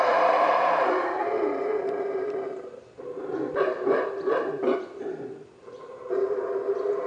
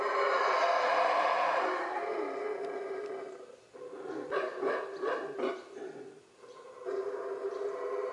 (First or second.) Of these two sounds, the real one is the second